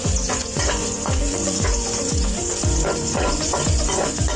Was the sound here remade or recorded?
remade